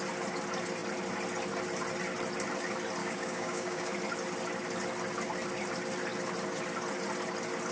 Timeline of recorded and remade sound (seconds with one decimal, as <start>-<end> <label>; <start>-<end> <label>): 0.0-3.0 recorded; 3.0-3.9 remade; 3.9-7.7 recorded